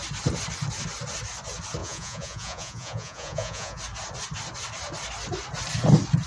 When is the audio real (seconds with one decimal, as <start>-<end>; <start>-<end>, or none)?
0.0-1.8; 3.8-6.3